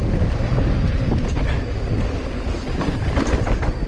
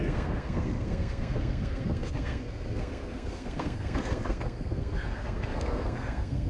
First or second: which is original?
first